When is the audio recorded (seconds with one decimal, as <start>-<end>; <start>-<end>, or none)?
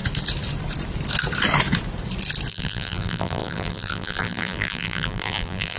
0.0-2.5